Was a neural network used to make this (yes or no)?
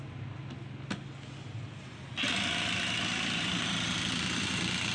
no